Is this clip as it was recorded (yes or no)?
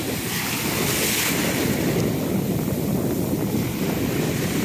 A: yes